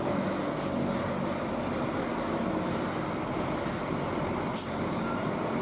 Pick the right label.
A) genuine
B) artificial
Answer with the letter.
A